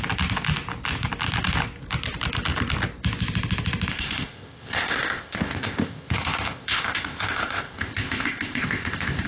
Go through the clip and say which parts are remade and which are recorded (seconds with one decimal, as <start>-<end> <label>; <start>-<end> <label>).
0.0-3.9 recorded; 3.9-9.3 remade